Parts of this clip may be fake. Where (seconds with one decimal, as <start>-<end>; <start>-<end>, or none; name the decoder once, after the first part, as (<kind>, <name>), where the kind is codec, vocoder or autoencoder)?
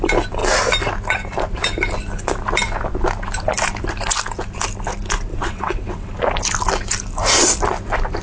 5.3-6.1 (vocoder, WaveNeXt)